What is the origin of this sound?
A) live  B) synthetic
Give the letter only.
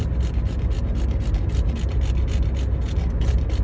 A